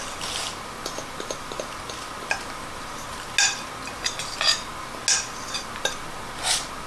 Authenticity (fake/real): real